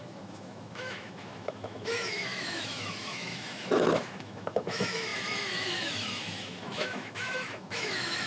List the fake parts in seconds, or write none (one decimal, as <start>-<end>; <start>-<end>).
0.0-8.3